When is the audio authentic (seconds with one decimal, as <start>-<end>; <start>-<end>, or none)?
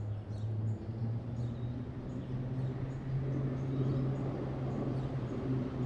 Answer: 0.0-5.9